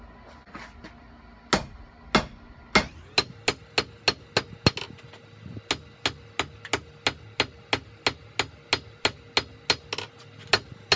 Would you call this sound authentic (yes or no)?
yes